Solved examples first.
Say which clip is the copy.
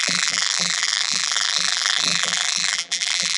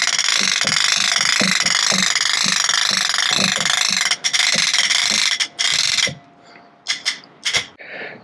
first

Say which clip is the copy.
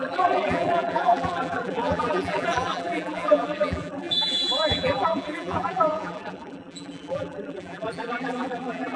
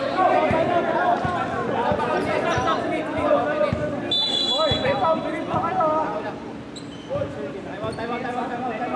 first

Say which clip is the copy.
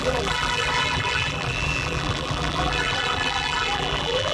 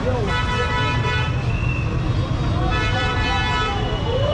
first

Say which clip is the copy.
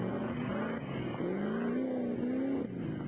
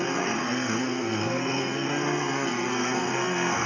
second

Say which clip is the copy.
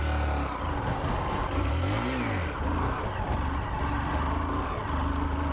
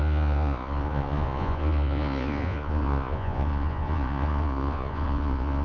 second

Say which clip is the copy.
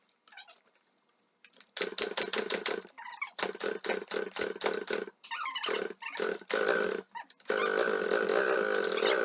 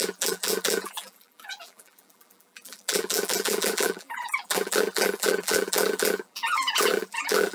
second